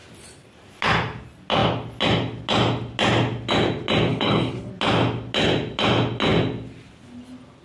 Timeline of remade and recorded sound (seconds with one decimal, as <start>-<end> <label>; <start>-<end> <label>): 0.0-4.1 recorded; 4.1-4.7 remade; 4.7-7.6 recorded